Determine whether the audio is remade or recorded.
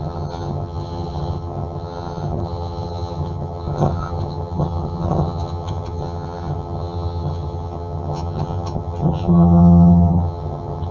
remade